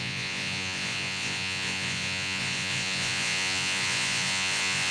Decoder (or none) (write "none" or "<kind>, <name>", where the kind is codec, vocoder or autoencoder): vocoder, Vocos